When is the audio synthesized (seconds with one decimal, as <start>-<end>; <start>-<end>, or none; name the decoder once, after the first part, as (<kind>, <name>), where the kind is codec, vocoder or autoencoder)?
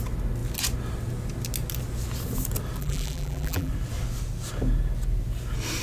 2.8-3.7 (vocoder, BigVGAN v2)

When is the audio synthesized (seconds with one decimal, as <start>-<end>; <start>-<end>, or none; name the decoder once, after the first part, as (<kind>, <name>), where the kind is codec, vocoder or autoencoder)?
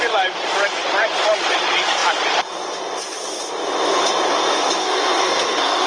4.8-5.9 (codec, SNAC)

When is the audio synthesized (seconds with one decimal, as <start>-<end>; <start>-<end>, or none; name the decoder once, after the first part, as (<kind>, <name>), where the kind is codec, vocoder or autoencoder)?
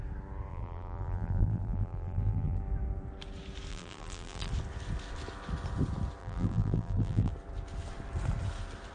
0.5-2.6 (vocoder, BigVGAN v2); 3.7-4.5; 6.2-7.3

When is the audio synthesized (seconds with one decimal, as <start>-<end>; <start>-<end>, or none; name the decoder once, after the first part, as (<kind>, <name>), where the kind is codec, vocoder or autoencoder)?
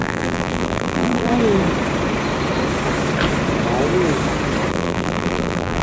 0.0-1.3 (vocoder, BigVGAN v2); 4.7-5.8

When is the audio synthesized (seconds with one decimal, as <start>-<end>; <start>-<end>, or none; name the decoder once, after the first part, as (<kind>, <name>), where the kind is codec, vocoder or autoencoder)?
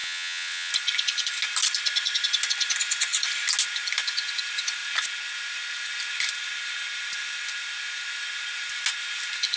0.0-0.7 (vocoder, WaveNeXt)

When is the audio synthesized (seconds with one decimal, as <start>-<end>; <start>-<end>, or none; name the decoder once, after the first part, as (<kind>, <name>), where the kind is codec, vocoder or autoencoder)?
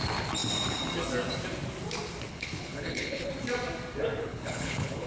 2.3-3.3 (codec, HILCodec); 4.2-5.1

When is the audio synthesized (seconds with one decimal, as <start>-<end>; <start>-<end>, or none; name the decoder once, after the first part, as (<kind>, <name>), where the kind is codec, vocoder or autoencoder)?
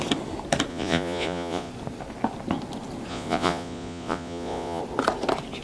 0.7-1.7 (vocoder, Vocos); 3.1-4.8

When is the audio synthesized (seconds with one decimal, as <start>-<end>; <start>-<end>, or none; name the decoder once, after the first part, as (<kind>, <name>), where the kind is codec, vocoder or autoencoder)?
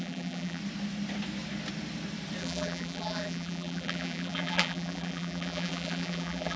0.0-0.6 (vocoder, BigVGAN v2); 2.4-6.6